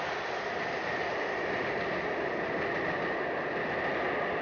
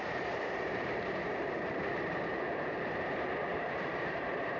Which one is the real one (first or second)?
first